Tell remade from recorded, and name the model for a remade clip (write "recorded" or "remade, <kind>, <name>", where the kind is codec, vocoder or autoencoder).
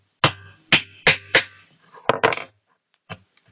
recorded